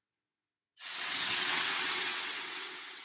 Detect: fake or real fake